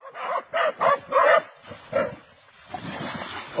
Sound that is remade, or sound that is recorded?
recorded